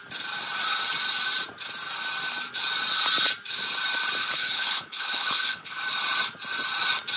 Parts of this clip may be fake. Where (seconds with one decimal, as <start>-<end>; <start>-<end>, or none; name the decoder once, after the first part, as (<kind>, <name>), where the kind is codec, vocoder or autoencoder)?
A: 4.2-5.8 (codec, HILCodec)